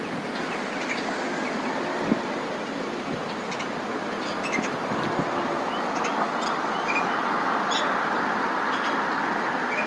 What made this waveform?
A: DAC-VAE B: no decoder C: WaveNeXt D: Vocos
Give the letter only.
B